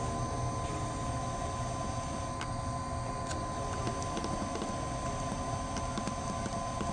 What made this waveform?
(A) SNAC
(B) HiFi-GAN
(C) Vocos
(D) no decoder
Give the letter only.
D